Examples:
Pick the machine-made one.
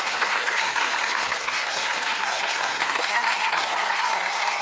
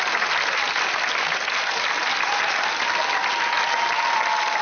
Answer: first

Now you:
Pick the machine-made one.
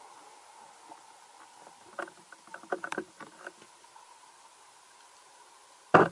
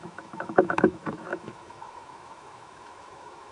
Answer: second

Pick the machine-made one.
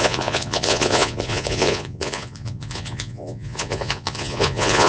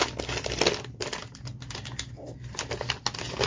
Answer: first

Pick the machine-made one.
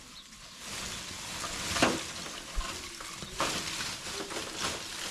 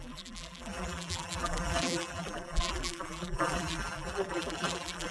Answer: second